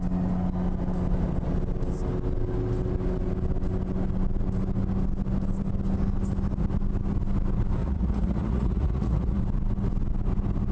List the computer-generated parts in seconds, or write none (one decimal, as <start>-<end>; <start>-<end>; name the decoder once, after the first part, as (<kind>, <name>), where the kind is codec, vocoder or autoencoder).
7.8-9.4 (vocoder, Vocos)